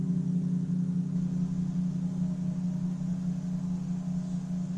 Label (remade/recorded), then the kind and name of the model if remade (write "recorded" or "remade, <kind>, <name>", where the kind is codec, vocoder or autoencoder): recorded